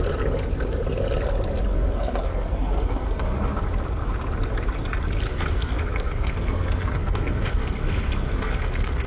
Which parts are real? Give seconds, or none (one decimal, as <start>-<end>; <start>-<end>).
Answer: 0.0-1.7; 3.6-5.3